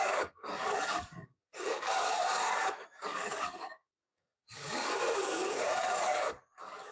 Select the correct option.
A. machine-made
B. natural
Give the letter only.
A